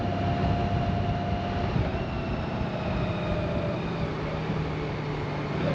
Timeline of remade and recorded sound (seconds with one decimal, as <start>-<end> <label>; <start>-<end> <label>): 0.0-5.7 recorded